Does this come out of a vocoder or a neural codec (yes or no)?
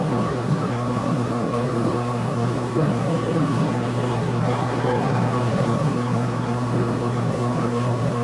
yes